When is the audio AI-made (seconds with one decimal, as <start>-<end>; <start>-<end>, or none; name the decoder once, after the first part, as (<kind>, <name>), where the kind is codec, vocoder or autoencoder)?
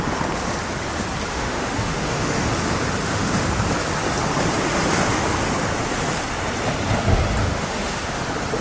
1.3-2.5 (autoencoder, DAC-VAE); 3.0-3.5; 7.4-8.2